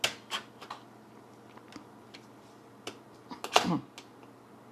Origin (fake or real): real